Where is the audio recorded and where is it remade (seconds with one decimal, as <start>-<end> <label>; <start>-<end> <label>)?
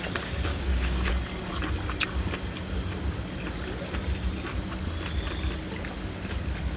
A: 0.0-0.5 recorded; 0.5-1.1 remade; 1.1-6.8 recorded